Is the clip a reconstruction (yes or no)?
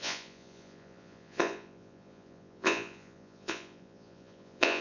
yes